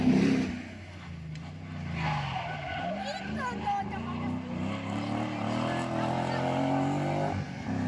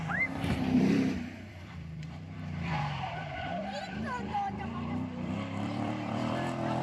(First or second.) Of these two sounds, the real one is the first